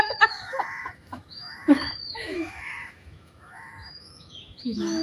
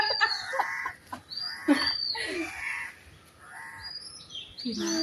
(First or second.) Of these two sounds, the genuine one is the second